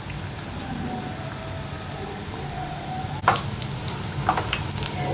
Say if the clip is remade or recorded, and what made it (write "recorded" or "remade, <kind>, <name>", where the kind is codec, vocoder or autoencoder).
recorded